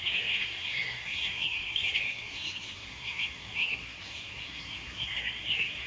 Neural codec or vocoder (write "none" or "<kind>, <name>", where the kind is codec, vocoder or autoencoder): codec, SNAC